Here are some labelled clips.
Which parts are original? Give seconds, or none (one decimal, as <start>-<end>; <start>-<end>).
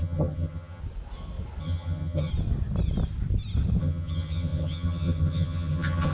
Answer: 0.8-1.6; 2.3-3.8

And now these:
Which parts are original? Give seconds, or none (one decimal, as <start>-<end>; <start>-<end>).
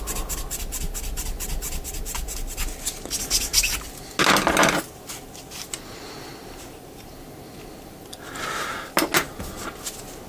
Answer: 0.0-10.3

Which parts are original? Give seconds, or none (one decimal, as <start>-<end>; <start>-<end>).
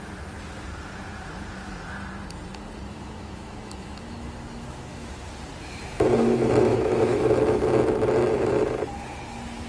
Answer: 0.0-2.9; 5.1-6.7; 7.3-9.7